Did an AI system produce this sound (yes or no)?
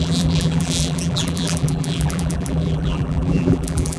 yes